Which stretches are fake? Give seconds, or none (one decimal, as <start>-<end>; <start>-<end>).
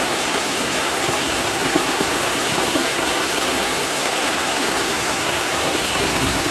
0.0-6.5